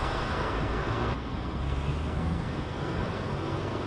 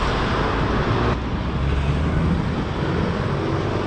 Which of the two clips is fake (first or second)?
first